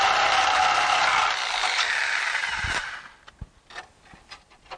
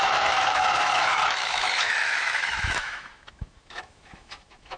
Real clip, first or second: first